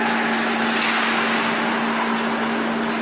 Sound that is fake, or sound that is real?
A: real